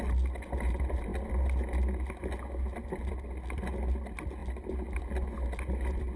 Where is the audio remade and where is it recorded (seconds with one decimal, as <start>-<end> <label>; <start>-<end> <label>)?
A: 0.0-6.2 recorded